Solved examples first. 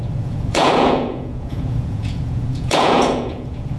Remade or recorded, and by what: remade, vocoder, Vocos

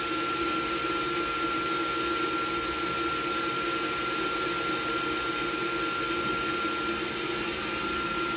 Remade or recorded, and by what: recorded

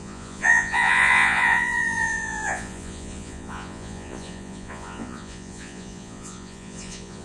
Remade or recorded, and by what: remade, vocoder, Vocos